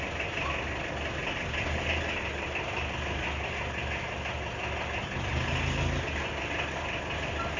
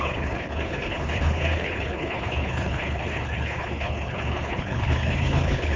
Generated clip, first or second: second